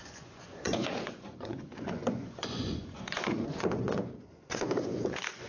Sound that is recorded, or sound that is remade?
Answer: remade